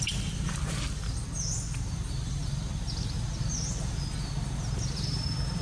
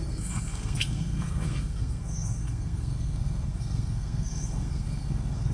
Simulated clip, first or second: second